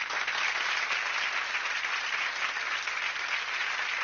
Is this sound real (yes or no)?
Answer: yes